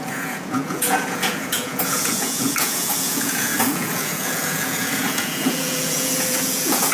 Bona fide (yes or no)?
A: no